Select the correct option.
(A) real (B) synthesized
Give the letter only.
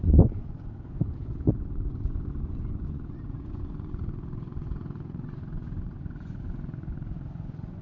B